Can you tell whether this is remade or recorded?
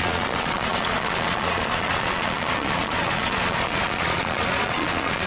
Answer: remade